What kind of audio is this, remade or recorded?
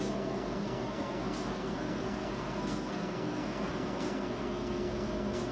remade